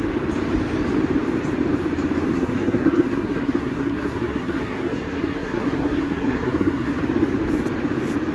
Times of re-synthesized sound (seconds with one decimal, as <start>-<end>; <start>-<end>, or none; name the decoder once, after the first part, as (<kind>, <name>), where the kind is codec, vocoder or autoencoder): 2.3-7.0 (codec, SNAC)

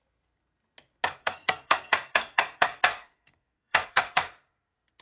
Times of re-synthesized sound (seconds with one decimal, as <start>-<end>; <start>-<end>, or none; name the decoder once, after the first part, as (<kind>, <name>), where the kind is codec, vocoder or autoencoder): 1.2-4.2 (codec, SNAC)